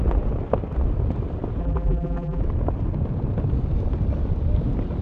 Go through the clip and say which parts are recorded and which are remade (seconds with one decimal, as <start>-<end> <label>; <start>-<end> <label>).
0.0-1.6 recorded; 1.6-2.4 remade; 2.4-5.0 recorded